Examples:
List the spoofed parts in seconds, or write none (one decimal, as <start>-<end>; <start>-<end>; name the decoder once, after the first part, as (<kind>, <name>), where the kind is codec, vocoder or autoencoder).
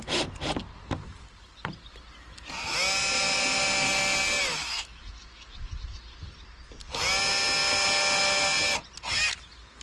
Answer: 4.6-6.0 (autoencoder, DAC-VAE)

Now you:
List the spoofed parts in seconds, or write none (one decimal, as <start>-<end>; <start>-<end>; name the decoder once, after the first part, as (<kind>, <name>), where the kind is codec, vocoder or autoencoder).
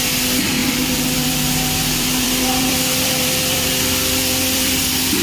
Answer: 0.6-3.7 (vocoder, BigVGAN v2); 4.2-4.8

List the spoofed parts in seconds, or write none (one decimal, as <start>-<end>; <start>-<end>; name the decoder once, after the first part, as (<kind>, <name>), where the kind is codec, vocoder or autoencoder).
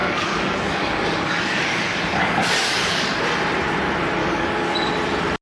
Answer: 0.0-3.2 (codec, DAC); 4.2-4.9